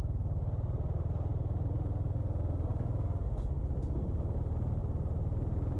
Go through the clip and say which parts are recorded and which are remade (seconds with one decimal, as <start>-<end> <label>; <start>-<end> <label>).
0.0-4.8 recorded; 4.8-5.8 remade